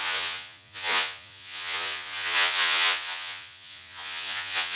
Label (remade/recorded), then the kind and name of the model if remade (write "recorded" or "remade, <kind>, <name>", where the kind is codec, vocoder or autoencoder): remade, vocoder, Vocos